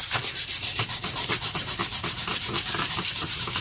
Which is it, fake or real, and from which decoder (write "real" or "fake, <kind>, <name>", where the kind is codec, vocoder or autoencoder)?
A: fake, vocoder, BigVGAN v2